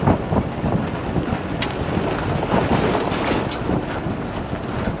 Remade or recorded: recorded